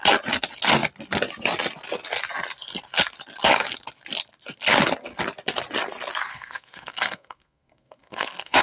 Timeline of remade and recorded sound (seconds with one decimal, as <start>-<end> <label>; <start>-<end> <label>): 0.0-6.3 recorded; 6.3-8.6 remade